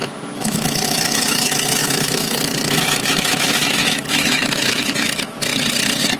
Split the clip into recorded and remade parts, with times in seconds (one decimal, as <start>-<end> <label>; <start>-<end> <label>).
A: 0.0-5.5 remade; 5.5-6.2 recorded